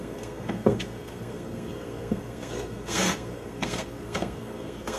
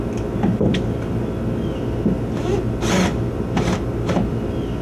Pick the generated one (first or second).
first